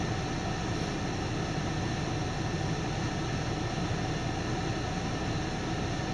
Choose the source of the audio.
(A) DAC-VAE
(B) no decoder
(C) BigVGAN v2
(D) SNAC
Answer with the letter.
B